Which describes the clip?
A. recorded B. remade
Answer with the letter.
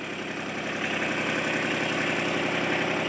A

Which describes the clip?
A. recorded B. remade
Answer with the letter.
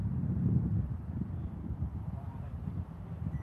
B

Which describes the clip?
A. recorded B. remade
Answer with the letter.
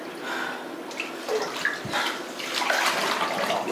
A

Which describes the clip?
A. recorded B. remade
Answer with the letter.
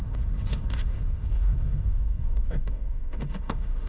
B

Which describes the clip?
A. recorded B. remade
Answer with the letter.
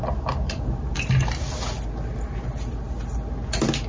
A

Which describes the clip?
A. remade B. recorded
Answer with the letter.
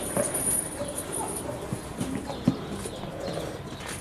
B